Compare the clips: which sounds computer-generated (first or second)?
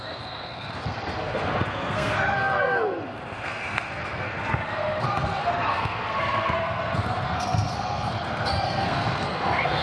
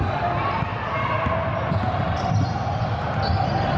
first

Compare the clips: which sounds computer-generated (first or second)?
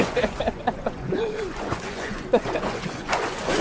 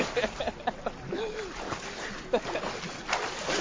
first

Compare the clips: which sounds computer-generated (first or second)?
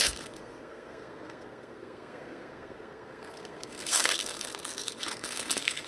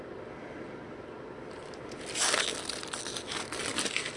first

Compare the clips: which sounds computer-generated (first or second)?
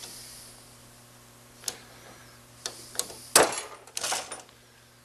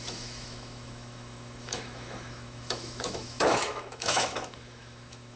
second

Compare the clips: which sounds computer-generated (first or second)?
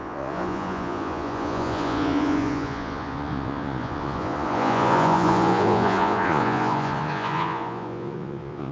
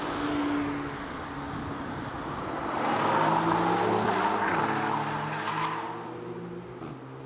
first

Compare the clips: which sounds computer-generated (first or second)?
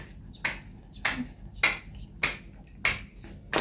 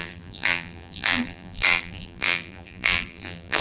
second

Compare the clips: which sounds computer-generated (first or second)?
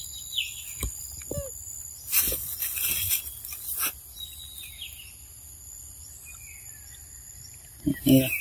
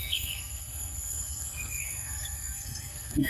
second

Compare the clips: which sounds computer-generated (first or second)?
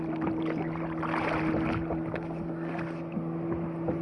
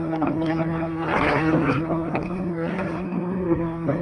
second